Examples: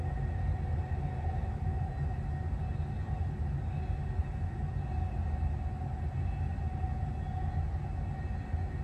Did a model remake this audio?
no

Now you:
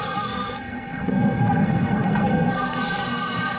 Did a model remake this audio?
yes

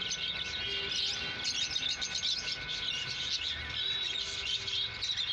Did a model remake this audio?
no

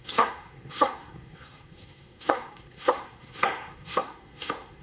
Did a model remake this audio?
yes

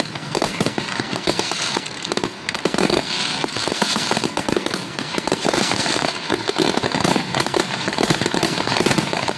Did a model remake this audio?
yes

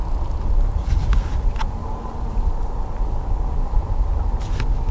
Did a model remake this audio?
no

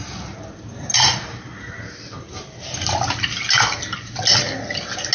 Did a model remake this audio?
no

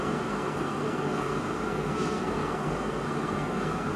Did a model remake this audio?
yes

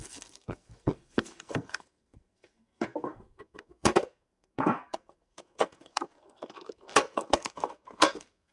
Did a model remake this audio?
yes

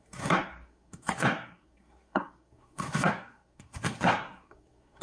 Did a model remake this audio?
yes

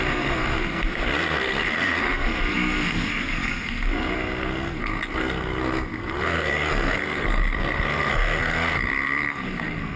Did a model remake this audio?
yes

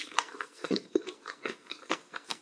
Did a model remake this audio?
yes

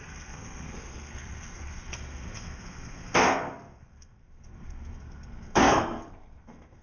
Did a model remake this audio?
yes